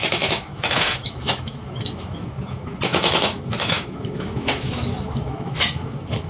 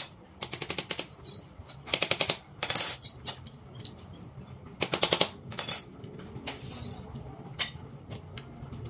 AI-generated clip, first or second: first